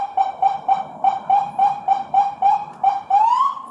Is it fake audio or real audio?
real